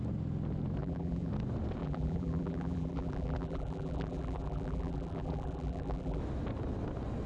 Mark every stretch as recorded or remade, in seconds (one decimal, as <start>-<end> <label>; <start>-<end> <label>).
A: 0.0-0.8 recorded; 0.8-1.3 remade; 1.3-1.8 recorded; 1.8-6.2 remade; 6.2-7.3 recorded